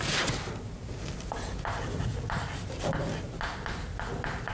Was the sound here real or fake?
real